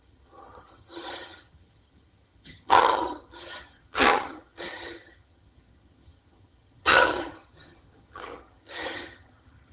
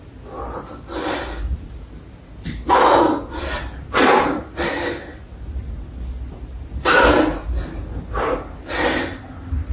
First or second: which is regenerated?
first